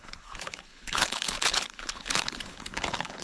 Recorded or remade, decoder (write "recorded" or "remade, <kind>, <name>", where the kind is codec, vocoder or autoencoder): remade, codec, HILCodec